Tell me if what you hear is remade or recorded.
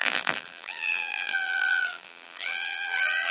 remade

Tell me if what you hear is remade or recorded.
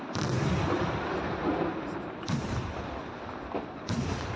recorded